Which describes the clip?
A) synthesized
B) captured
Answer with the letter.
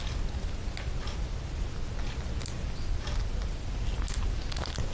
B